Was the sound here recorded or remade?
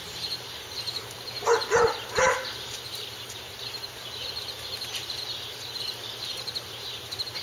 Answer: remade